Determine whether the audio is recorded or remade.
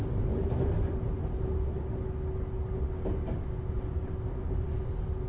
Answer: recorded